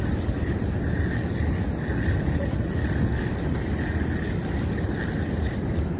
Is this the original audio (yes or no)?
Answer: yes